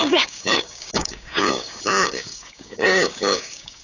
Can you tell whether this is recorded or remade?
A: remade